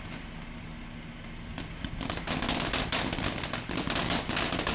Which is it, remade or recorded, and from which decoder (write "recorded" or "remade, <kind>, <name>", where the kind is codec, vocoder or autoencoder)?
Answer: recorded